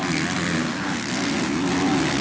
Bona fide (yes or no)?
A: yes